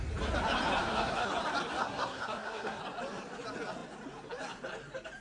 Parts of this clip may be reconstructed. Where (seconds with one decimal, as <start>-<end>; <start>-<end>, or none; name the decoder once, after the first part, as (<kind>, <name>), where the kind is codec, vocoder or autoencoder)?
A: 0.8-1.3 (codec, SNAC); 1.8-2.8

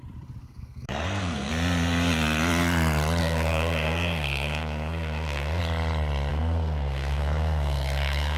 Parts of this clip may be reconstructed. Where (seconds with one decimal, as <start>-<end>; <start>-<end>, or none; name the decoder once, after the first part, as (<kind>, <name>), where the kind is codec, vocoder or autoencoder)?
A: 0.4-1.5 (codec, SNAC); 3.2-5.6; 6.3-8.4

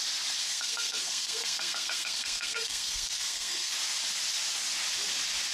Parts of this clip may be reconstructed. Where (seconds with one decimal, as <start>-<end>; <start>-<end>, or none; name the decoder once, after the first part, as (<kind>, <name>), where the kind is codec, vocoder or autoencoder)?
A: 0.4-3.7 (codec, SNAC)

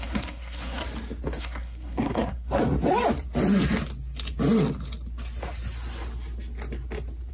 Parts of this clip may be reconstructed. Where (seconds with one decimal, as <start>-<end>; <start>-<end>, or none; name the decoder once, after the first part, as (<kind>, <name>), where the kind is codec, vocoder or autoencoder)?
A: 0.0-0.8 (codec, SNAC); 1.4-2.6

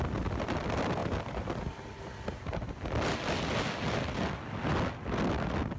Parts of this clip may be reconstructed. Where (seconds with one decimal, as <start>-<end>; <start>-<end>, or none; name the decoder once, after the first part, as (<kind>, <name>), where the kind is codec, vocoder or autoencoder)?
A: none

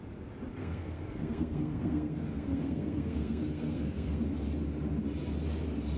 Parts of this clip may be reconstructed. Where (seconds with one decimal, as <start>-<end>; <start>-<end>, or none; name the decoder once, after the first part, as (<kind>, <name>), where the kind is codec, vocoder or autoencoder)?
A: 0.6-4.2 (codec, SNAC)

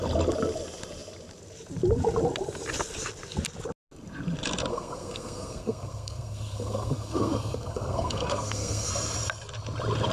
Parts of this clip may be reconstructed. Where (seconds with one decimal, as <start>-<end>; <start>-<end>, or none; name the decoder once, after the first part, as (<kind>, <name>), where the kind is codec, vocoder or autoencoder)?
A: 4.7-8.9 (codec, SNAC)